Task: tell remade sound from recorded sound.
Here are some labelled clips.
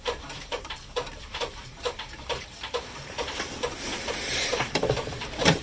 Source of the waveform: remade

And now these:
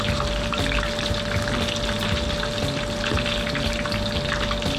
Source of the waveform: recorded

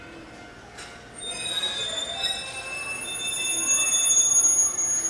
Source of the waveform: recorded